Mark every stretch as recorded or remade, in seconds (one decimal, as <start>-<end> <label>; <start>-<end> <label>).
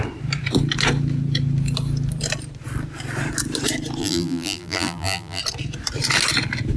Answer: 0.0-4.0 recorded; 4.0-5.4 remade; 5.4-6.8 recorded